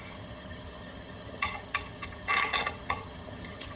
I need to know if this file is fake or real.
fake